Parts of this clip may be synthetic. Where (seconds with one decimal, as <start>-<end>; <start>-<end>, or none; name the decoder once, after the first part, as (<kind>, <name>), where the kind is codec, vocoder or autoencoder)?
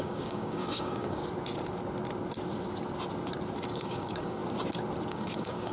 0.0-1.2 (codec, DAC); 3.7-4.4; 5.1-5.7